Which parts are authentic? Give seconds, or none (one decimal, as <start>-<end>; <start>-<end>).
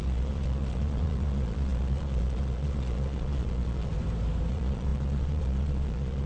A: 3.9-4.5